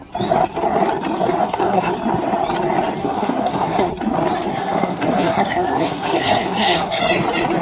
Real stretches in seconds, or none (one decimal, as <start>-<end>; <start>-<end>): 0.0-1.4; 1.9-3.0; 3.9-4.5; 7.0-7.6